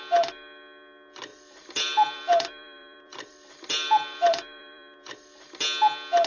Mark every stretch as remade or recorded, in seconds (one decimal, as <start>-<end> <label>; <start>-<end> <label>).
0.0-1.3 recorded; 1.3-5.1 remade; 5.1-6.3 recorded